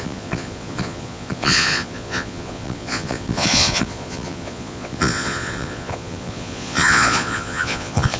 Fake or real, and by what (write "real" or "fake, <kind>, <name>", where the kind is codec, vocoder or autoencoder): fake, vocoder, Vocos